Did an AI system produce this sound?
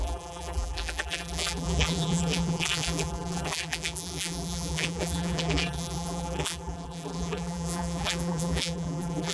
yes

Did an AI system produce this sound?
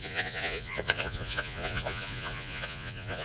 yes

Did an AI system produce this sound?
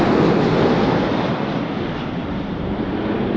no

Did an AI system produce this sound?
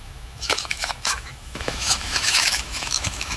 yes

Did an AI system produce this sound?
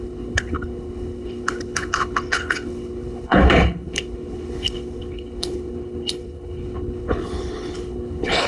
yes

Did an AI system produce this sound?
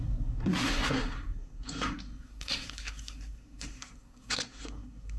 yes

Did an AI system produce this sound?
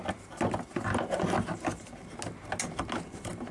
no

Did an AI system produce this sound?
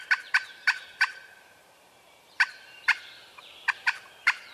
yes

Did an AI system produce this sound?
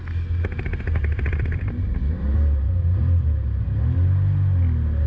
no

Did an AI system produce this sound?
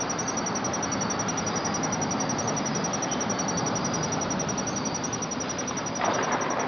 no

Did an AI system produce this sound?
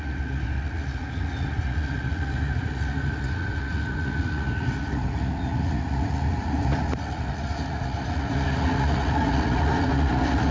yes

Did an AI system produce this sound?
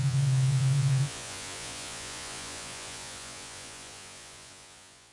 yes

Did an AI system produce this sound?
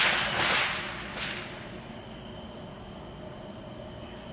no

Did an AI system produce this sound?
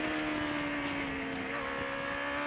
no